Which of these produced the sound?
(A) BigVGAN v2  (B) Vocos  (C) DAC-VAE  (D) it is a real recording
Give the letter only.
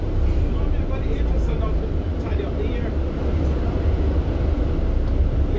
D